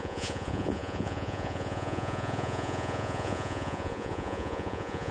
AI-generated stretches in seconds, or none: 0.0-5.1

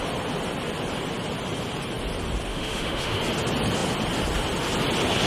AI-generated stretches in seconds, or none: 2.5-3.2

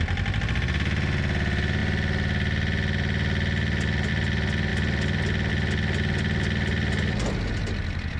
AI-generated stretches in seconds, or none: none

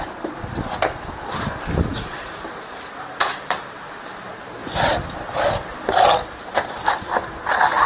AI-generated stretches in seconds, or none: none

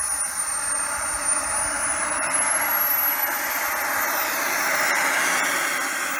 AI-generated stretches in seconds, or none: none

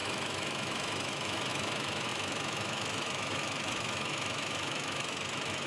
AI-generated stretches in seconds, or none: 0.0-5.7

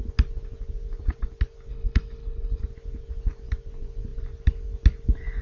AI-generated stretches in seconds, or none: 1.7-2.6